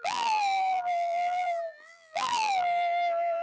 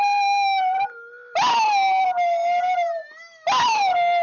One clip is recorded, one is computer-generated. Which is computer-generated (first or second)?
first